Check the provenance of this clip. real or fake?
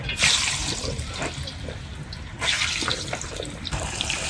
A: fake